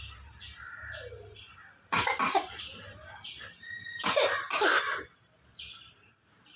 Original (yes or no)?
yes